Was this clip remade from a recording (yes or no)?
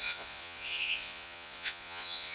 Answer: yes